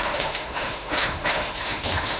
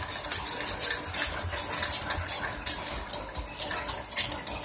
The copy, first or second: first